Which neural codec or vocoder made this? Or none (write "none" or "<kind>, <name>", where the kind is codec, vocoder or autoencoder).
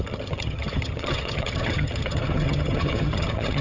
vocoder, HiFi-GAN